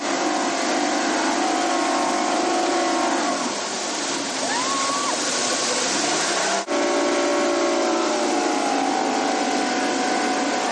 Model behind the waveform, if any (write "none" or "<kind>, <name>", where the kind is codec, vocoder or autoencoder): none